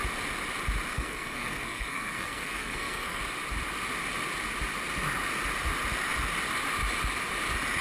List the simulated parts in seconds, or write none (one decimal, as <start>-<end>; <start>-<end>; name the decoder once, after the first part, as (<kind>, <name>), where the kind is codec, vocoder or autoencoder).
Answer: 0.9-3.2 (codec, SNAC)